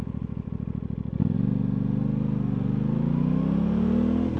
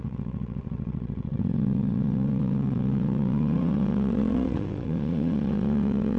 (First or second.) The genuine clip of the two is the first